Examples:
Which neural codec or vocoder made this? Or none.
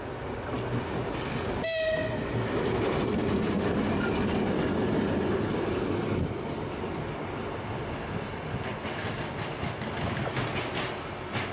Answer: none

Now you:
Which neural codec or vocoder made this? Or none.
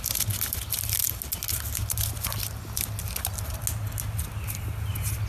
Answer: none